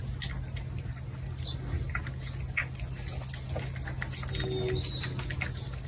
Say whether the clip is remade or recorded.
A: recorded